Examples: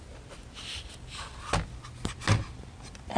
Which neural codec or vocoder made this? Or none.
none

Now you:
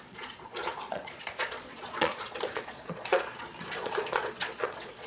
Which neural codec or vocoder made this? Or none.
vocoder, Vocos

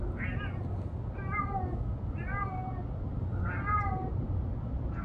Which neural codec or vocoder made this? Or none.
none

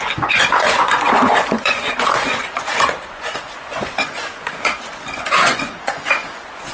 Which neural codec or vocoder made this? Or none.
vocoder, Vocos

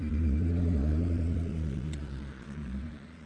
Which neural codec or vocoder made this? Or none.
vocoder, Vocos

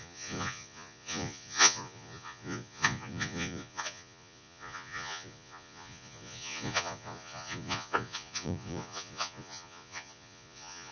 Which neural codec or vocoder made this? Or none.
vocoder, Vocos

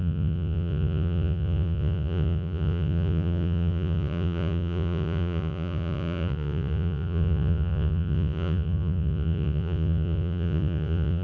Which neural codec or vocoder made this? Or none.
vocoder, Vocos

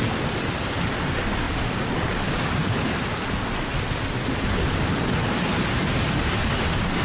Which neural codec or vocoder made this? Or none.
none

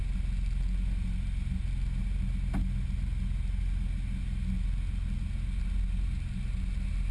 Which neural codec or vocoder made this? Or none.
none